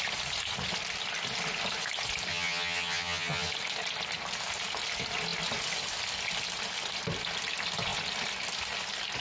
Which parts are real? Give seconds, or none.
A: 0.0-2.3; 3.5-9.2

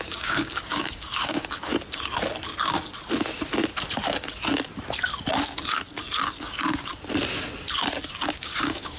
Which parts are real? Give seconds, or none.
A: 1.7-6.4; 6.9-8.4

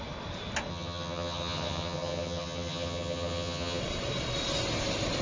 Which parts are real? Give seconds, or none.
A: 0.0-0.7; 3.8-5.2

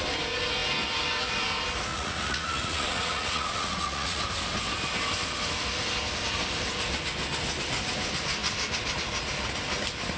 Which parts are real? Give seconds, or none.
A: 0.0-1.9; 4.2-10.2

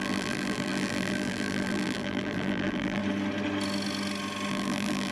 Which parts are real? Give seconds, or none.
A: 3.0-4.5

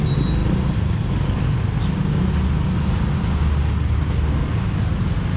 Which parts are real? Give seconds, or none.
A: 0.0-5.4